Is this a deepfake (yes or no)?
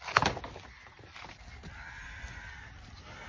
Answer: no